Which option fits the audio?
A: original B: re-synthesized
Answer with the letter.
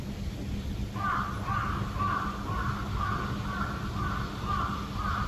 A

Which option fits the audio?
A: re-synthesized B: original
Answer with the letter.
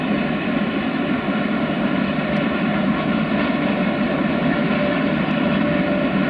B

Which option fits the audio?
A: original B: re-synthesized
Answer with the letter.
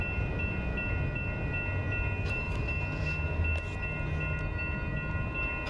A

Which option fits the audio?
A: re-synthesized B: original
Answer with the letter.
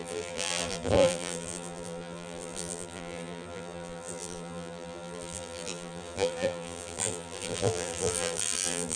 A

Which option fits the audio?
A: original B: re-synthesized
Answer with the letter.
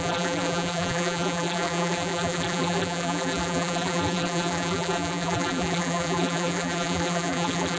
B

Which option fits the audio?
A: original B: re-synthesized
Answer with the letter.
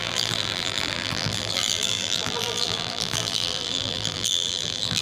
B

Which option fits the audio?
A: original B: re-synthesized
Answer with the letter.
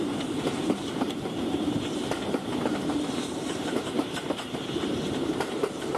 B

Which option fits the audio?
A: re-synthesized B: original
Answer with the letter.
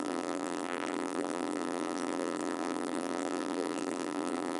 A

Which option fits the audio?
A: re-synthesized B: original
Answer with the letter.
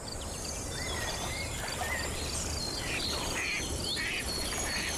A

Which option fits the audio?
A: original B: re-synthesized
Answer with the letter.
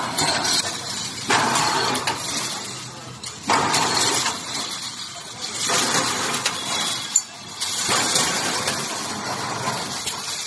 B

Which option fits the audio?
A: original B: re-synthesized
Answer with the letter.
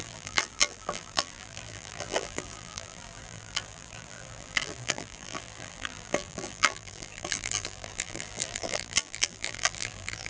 B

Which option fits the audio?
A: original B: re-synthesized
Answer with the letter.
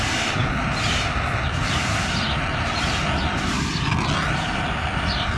A